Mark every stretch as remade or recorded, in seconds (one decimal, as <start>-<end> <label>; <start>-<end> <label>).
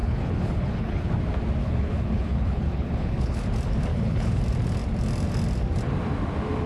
0.0-1.1 remade; 1.1-1.6 recorded; 1.6-3.4 remade; 3.4-3.9 recorded; 3.9-4.4 remade; 4.4-6.7 recorded